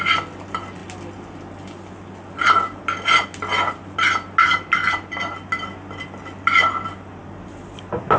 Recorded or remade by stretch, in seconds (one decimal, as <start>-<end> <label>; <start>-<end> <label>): 0.0-8.2 recorded